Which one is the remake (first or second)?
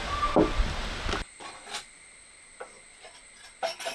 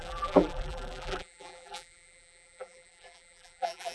second